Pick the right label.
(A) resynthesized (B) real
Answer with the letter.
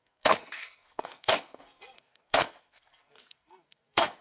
A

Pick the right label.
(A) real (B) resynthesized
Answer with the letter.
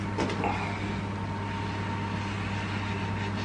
A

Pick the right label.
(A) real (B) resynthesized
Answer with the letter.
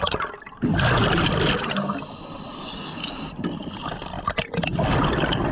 A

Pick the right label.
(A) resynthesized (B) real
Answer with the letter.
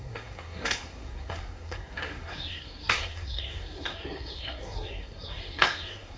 A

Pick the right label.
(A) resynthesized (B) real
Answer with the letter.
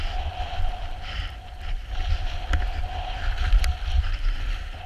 B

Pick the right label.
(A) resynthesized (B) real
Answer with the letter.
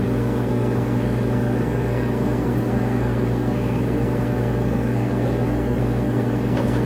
A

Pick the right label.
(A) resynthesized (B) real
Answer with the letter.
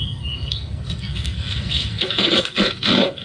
A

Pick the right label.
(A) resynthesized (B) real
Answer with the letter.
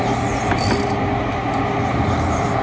B